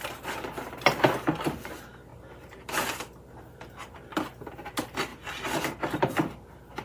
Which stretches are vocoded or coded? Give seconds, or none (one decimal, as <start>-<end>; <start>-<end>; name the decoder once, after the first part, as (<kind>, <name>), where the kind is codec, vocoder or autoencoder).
none

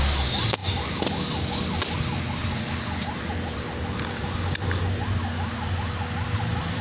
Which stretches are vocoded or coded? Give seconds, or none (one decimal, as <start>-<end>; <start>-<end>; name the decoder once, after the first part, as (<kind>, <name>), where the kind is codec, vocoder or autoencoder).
none

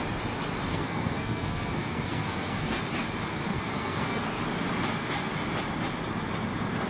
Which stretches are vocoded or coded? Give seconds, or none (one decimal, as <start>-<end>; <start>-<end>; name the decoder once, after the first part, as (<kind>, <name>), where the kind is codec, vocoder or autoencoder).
0.7-2.8 (codec, SNAC); 3.5-4.4

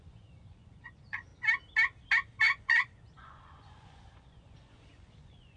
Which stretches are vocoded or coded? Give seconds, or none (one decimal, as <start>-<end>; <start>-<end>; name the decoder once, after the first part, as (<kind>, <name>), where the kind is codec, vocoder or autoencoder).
0.0-1.3 (vocoder, Vocos); 2.6-5.6

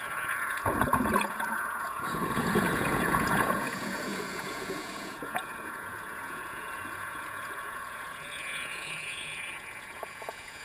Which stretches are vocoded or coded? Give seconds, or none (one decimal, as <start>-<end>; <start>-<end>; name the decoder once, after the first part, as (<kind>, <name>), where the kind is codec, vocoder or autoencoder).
0.0-10.6 (vocoder, Vocos)